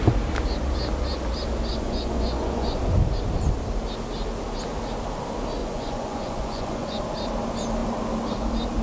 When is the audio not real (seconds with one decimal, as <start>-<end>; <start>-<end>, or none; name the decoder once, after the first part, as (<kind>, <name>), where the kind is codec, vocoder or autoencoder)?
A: 1.7-2.8 (vocoder, Vocos); 5.6-7.0